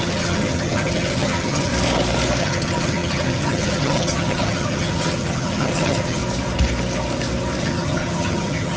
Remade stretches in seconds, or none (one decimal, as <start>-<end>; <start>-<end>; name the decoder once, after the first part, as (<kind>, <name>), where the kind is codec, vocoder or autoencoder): 0.0-1.7 (vocoder, HiFi-GAN); 2.4-6.2; 7.6-8.8